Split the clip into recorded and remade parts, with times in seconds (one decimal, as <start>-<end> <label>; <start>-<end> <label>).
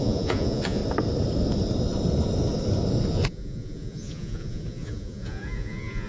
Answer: 0.0-0.8 remade; 0.8-3.1 recorded; 3.1-6.1 remade